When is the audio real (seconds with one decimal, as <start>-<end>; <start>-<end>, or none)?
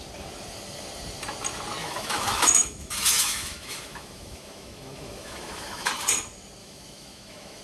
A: 0.0-1.8; 5.9-6.6